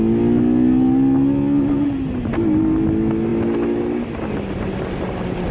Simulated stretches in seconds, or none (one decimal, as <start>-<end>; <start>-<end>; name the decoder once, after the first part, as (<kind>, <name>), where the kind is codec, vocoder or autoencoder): none